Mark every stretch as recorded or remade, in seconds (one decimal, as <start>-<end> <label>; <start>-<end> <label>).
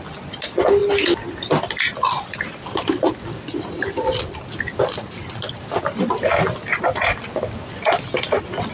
0.0-8.7 recorded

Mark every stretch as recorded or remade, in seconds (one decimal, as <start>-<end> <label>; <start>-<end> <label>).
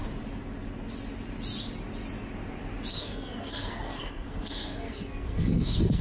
0.0-2.9 recorded; 2.9-6.0 remade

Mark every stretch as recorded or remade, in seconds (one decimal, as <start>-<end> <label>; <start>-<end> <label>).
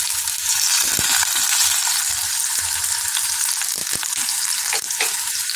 0.0-3.8 recorded; 3.8-5.6 remade